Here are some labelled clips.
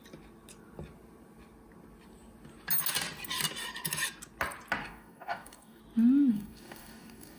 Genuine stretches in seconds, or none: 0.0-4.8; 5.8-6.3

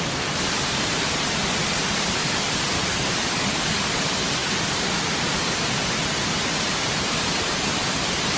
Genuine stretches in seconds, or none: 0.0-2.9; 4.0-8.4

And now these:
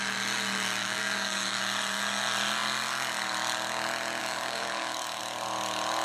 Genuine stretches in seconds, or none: 0.0-0.8; 1.6-4.2; 5.2-6.0